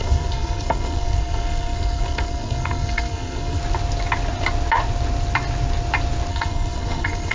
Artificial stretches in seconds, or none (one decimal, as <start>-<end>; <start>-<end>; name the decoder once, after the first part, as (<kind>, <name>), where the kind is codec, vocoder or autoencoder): 0.0-3.6 (codec, SNAC); 6.3-7.3